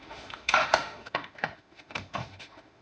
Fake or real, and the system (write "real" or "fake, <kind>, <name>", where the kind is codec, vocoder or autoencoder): fake, autoencoder, DAC-VAE